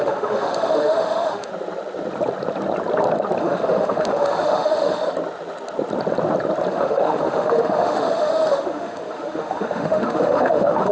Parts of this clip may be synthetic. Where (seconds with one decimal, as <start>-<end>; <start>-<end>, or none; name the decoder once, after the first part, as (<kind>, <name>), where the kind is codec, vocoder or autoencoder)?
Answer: 0.0-1.5 (autoencoder, DAC-VAE); 3.4-5.0; 6.7-10.9